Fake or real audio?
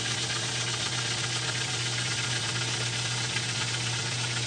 real